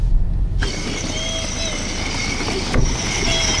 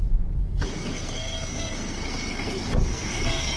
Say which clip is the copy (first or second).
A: second